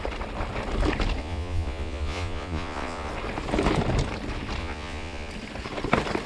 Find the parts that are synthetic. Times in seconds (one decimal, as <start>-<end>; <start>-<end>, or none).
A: 1.2-3.1; 4.6-5.3